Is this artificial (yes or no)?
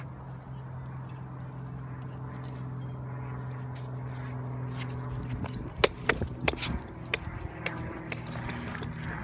no